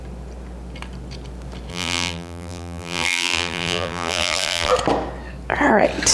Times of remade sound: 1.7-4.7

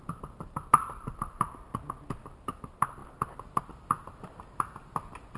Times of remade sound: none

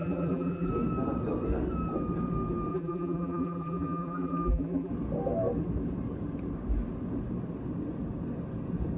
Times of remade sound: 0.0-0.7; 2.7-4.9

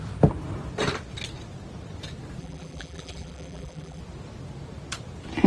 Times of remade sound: 2.4-4.0